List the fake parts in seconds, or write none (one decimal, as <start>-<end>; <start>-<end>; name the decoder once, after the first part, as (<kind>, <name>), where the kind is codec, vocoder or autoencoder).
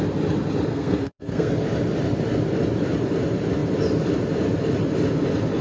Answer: 0.7-1.5 (codec, SNAC)